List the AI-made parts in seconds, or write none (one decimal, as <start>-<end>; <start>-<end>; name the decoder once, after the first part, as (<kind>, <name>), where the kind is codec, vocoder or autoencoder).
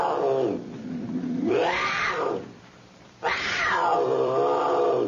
1.6-5.1 (vocoder, BigVGAN v2)